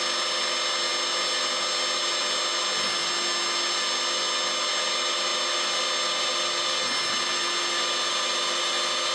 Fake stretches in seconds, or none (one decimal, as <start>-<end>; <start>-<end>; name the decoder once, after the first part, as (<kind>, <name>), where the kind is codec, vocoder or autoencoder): none